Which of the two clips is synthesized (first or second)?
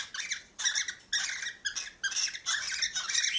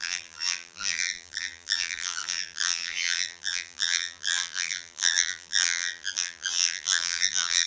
second